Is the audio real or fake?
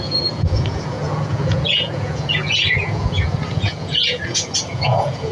fake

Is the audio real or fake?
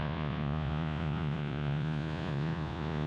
fake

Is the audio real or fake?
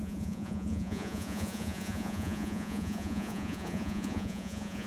fake